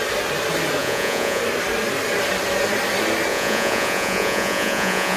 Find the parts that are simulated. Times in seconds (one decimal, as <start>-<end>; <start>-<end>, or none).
0.8-1.4; 3.3-5.2

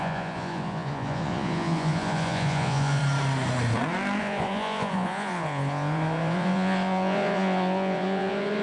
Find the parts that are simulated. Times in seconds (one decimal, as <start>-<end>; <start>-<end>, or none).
0.0-3.0; 4.2-8.6

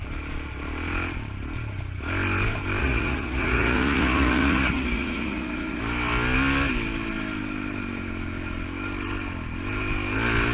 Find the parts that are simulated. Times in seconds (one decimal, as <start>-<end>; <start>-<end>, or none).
2.8-5.8